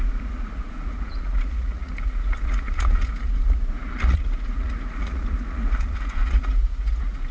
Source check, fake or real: fake